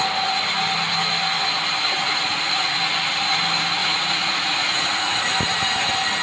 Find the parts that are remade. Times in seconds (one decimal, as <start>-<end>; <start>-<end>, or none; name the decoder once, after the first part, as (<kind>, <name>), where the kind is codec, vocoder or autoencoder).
2.0-2.7 (vocoder, Vocos); 3.8-5.2